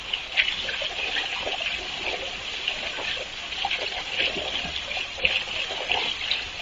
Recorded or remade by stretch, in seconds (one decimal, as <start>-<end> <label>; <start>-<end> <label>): 0.0-6.6 recorded

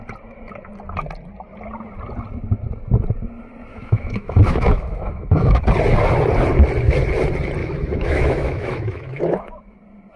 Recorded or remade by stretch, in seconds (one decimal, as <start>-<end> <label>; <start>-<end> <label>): 0.0-3.7 recorded; 3.7-5.6 remade; 5.6-7.6 recorded; 7.6-9.6 remade; 9.6-10.2 recorded

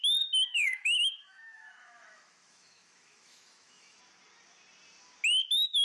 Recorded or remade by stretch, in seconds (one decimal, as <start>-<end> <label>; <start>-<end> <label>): 0.0-0.5 recorded; 0.5-4.0 remade; 4.0-5.8 recorded